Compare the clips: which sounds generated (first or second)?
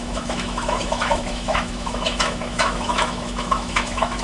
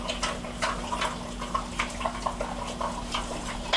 first